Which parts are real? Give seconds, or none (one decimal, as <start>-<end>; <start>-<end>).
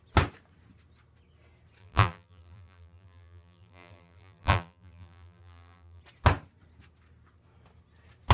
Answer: 0.0-1.8; 6.0-8.3